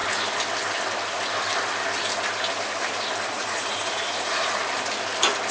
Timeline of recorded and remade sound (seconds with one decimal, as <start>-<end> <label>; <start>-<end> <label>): 0.0-3.3 recorded; 3.3-4.6 remade; 4.6-5.5 recorded